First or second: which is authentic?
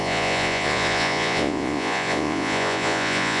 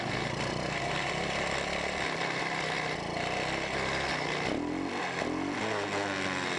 second